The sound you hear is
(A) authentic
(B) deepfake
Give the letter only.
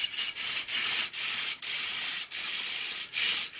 A